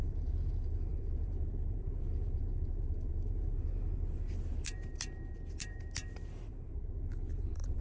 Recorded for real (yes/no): no